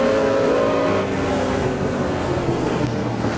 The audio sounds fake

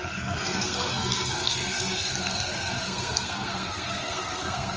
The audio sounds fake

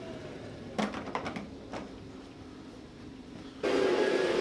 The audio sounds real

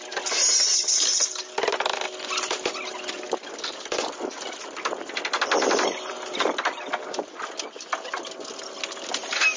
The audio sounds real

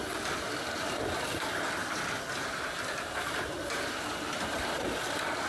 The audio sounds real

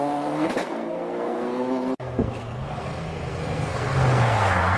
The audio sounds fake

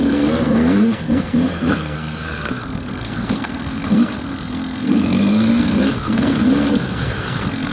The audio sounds fake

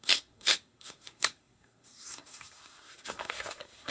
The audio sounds fake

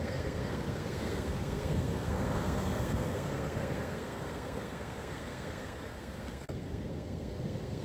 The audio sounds fake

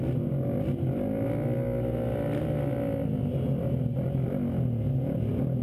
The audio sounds real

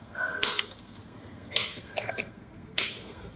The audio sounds fake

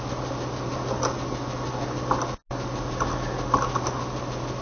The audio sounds real